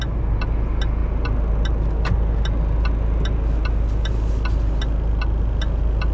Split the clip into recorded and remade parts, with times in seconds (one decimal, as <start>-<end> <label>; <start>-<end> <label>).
0.0-6.1 recorded